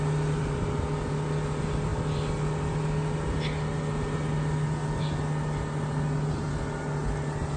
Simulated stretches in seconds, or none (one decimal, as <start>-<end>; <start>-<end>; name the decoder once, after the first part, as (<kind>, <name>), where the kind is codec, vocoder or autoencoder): none